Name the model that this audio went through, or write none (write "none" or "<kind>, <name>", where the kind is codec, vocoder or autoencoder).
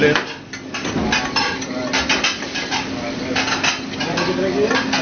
none